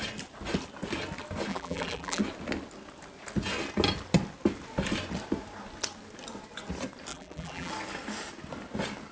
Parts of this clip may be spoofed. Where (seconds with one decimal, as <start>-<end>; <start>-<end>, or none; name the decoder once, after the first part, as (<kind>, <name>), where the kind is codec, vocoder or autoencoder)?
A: 1.5-2.2 (vocoder, BigVGAN v2); 7.1-7.7